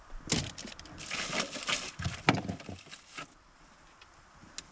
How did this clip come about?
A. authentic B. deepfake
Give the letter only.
A